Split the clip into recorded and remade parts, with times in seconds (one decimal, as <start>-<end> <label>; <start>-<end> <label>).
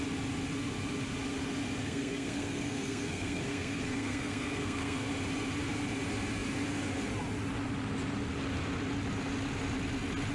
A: 0.0-1.8 recorded; 1.8-5.1 remade; 5.1-10.3 recorded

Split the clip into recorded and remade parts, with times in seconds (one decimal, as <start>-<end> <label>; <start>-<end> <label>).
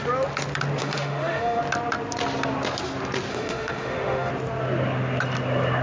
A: 0.0-0.8 recorded; 0.8-1.6 remade; 1.6-3.3 recorded; 3.3-4.3 remade; 4.3-5.8 recorded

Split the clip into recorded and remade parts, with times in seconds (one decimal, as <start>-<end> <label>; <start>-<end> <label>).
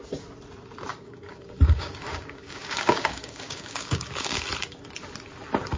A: 0.0-0.9 recorded; 0.9-4.4 remade; 4.4-5.8 recorded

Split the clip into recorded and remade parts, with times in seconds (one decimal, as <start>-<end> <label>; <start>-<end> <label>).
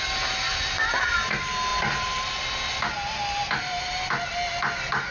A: 0.0-5.1 recorded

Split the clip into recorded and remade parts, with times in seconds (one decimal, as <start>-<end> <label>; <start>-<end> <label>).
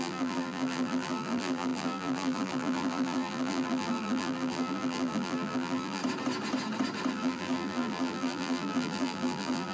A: 0.0-6.0 remade; 6.0-7.1 recorded; 7.1-9.7 remade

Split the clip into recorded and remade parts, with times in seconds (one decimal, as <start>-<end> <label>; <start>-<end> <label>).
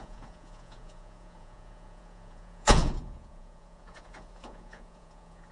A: 0.0-5.5 remade